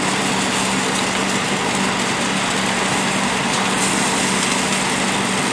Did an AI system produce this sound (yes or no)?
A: no